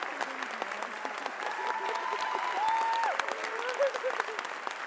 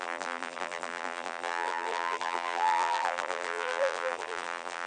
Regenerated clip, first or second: second